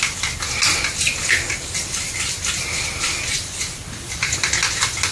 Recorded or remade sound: recorded